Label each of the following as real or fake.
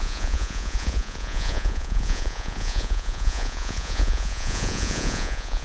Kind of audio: fake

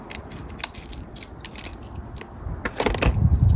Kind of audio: real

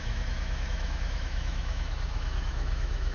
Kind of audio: fake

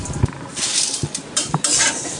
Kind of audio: fake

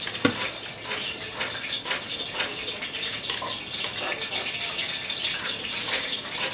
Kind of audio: real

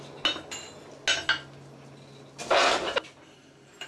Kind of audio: real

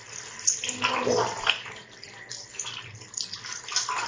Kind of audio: real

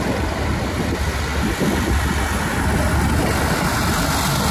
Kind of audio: real